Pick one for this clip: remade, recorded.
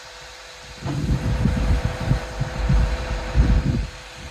remade